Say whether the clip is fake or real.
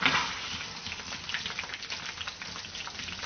real